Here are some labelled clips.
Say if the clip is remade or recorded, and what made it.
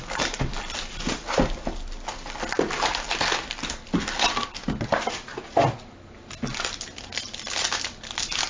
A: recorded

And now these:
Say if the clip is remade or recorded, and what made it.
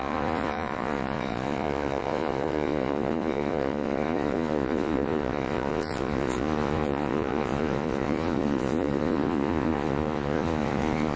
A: remade, vocoder, Vocos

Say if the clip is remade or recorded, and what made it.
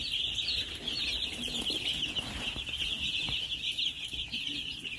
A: recorded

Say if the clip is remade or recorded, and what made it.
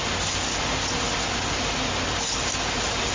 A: recorded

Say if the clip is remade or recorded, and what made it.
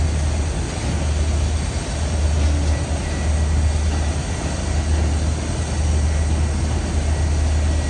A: recorded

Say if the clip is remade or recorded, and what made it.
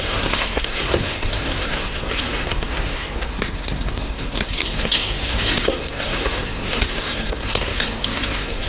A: remade, codec, SNAC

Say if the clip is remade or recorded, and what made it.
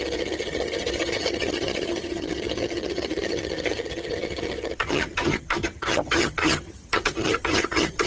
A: remade, vocoder, HiFi-GAN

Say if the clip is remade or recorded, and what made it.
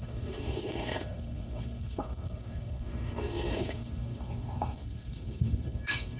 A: remade, codec, SNAC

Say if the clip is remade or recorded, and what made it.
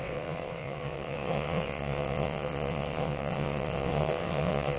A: remade, vocoder, WaveNeXt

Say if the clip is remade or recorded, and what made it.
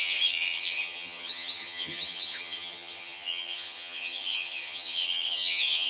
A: remade, vocoder, HiFi-GAN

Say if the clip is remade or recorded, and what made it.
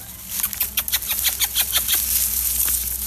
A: recorded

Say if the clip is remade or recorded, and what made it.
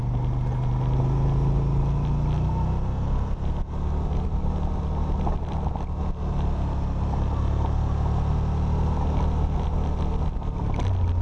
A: recorded